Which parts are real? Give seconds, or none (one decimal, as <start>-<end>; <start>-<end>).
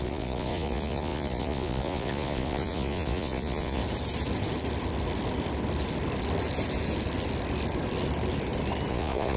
3.8-8.9